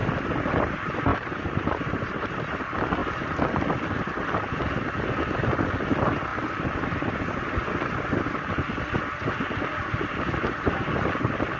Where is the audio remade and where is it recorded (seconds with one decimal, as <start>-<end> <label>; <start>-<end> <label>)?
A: 0.0-1.1 recorded; 1.1-2.6 remade; 2.6-11.6 recorded

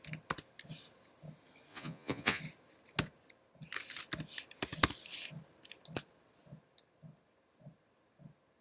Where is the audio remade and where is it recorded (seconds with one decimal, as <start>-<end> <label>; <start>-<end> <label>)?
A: 0.0-1.7 recorded; 1.7-2.4 remade; 2.4-8.6 recorded

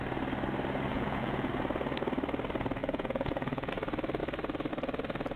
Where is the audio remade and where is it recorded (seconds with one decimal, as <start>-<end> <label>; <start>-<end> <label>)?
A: 0.0-0.9 recorded; 0.9-1.5 remade; 1.5-2.8 recorded; 2.8-3.7 remade; 3.7-5.4 recorded

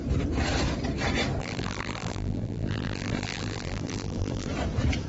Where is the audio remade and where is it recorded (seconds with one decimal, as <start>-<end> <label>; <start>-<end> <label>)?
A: 0.0-1.4 recorded; 1.4-4.5 remade; 4.5-5.1 recorded

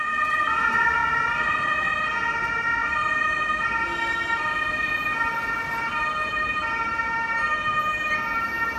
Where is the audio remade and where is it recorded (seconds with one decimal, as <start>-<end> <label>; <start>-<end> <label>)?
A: 0.0-8.8 recorded